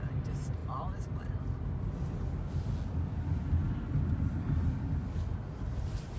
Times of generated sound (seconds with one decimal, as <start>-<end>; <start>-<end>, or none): none